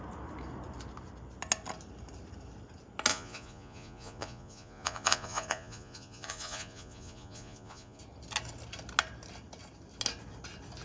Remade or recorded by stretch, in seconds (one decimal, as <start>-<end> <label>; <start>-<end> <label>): 0.0-3.1 recorded; 3.1-8.0 remade; 8.0-10.8 recorded